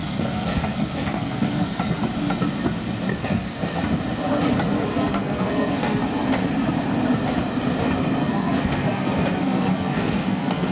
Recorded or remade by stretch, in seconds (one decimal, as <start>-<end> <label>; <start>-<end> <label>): 0.0-1.8 remade; 1.8-3.1 recorded; 3.1-3.8 remade; 3.8-4.9 recorded; 4.9-6.0 remade; 6.0-8.2 recorded; 8.2-10.7 remade